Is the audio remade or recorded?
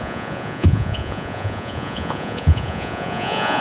remade